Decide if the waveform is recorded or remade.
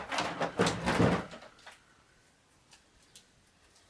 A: recorded